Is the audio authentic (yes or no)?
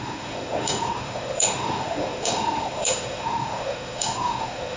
no